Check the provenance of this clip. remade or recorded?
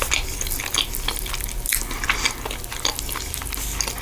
recorded